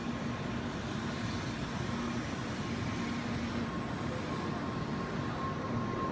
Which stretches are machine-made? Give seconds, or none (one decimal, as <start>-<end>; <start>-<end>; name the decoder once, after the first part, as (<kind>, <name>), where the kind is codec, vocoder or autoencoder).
none